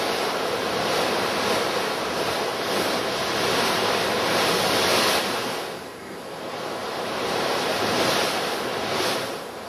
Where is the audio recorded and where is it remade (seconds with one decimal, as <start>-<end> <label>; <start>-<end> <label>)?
0.0-2.5 recorded; 2.5-3.9 remade; 3.9-5.4 recorded; 5.4-6.0 remade; 6.0-6.8 recorded; 6.8-7.6 remade; 7.6-9.7 recorded